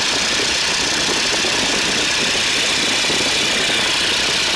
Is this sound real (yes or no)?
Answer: yes